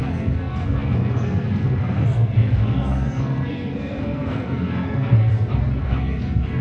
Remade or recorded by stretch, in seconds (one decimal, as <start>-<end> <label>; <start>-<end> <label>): 0.0-5.3 remade; 5.3-5.8 recorded; 5.8-6.6 remade